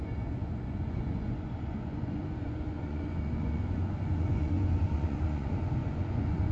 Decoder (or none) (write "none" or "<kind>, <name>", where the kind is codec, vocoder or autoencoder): vocoder, Vocos